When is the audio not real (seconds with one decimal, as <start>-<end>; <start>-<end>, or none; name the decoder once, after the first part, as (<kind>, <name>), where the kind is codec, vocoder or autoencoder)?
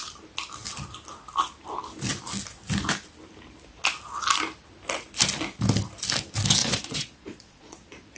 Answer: 6.6-8.2 (vocoder, Vocos)